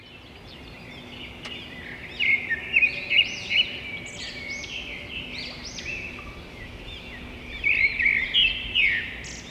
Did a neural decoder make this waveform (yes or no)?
no